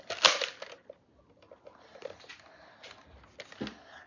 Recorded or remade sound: recorded